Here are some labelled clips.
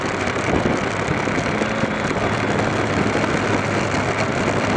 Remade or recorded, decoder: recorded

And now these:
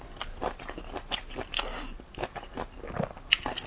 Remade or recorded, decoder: recorded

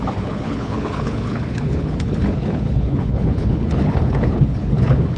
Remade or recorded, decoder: remade, codec, HILCodec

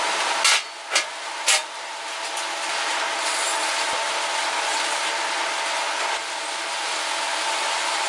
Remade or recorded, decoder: recorded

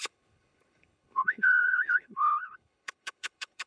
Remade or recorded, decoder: remade, codec, HILCodec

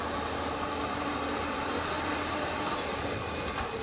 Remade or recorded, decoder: recorded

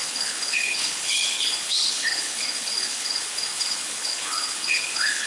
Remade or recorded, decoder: remade, codec, HILCodec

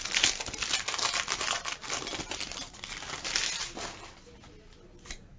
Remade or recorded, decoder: recorded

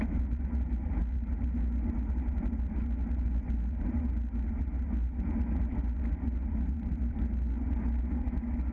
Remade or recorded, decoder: recorded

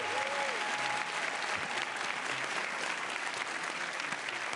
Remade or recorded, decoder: recorded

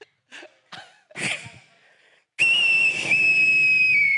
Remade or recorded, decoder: recorded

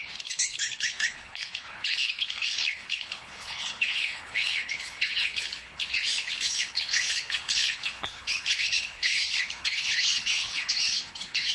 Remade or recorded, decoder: remade, codec, HILCodec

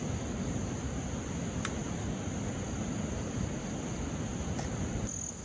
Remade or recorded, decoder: recorded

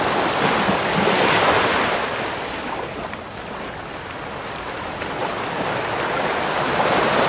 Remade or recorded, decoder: recorded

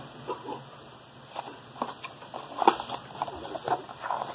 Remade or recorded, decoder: recorded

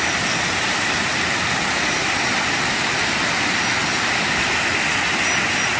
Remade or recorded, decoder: recorded